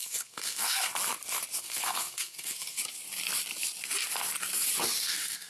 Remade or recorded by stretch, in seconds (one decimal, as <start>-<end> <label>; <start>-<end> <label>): 0.0-0.9 remade; 0.9-1.6 recorded; 1.6-2.8 remade; 2.8-5.0 recorded; 5.0-5.5 remade